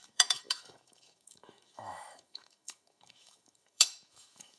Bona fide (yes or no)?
no